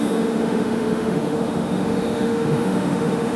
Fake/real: fake